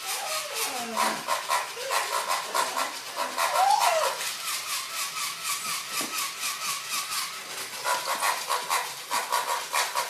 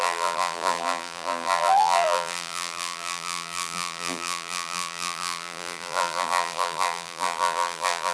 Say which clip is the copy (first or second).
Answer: second